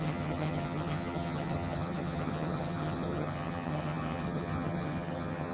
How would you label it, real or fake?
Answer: fake